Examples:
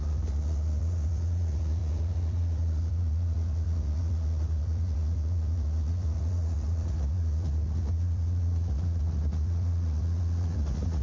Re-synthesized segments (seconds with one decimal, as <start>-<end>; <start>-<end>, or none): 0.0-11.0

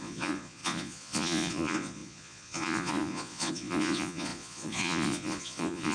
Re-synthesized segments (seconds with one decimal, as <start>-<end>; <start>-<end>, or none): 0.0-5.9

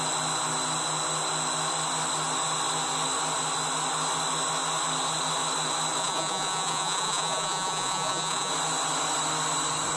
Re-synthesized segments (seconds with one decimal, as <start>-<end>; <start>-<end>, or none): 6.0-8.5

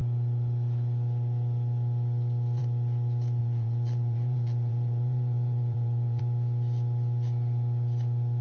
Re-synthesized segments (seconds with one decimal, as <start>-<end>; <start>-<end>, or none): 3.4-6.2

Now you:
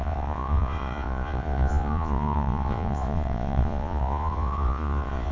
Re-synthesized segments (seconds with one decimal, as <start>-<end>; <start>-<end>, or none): 0.0-5.3